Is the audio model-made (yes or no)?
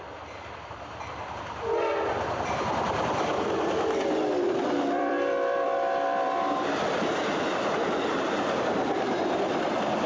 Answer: yes